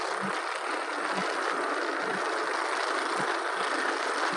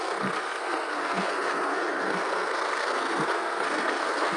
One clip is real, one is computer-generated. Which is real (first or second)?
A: first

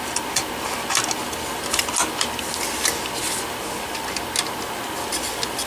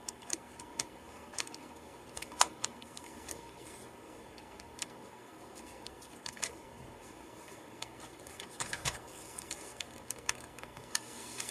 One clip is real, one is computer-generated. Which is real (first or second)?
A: first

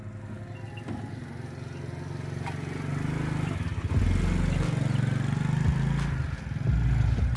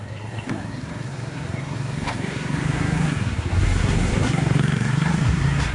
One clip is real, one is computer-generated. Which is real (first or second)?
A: first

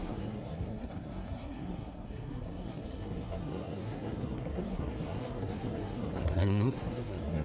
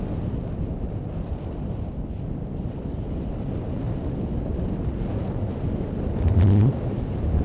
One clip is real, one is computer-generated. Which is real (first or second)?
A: second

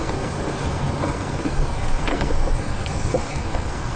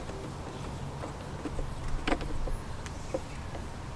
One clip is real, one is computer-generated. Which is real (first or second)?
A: second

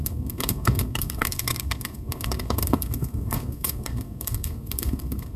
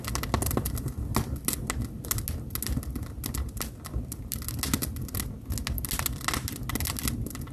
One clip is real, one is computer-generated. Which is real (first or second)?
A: second